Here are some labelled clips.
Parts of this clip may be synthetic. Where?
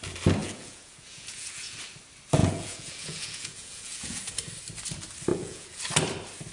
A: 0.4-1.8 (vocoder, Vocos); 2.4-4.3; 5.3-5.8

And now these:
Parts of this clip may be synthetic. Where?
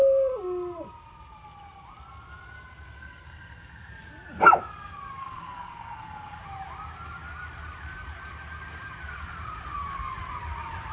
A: 3.0-3.9 (codec, SNAC); 5.2-6.4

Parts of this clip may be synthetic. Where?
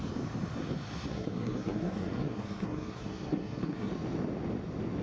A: 1.1-3.9 (codec, SNAC)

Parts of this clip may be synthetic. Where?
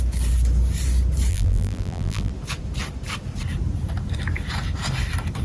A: 1.3-2.3 (vocoder, BigVGAN v2)